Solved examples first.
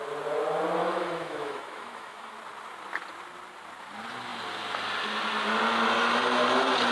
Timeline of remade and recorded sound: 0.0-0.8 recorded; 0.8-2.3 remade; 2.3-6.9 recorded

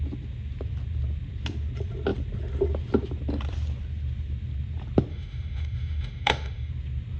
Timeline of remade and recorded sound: 0.0-5.1 recorded; 5.1-6.7 remade; 6.7-7.2 recorded